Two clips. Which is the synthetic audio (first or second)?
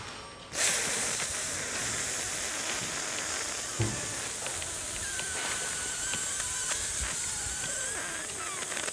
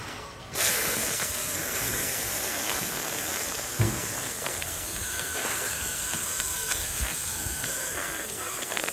second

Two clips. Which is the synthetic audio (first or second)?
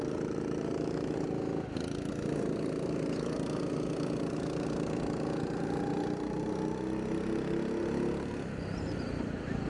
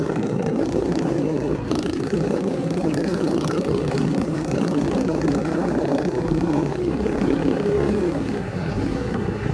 second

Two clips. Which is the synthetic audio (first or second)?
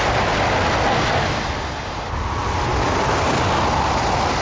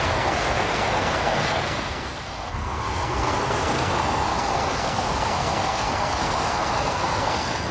second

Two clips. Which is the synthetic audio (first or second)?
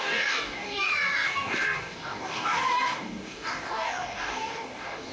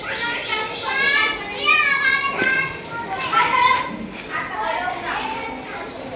first